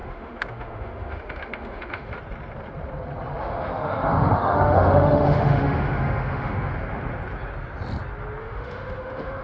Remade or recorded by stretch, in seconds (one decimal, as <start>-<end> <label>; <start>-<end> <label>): 0.0-2.1 remade; 2.1-3.4 recorded; 3.4-6.7 remade; 6.7-8.4 recorded; 8.4-9.4 remade